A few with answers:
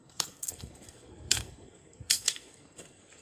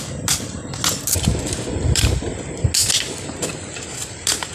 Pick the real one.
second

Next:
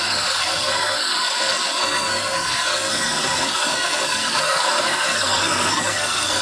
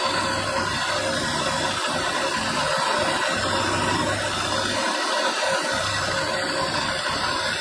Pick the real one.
second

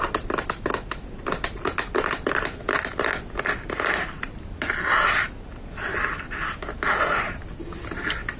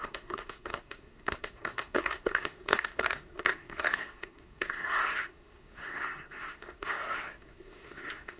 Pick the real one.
first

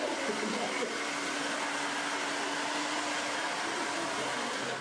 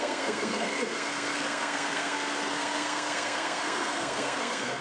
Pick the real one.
first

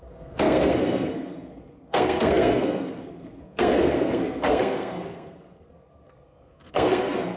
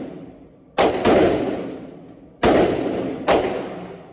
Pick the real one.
second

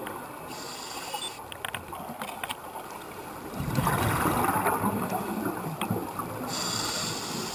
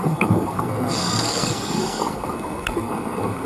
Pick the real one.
first